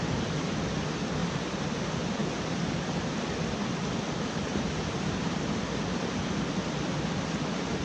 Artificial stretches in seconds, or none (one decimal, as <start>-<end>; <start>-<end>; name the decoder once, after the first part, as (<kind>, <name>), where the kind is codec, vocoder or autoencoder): 1.2-1.8 (vocoder, BigVGAN v2); 4.5-5.4